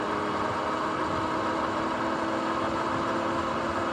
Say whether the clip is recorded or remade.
recorded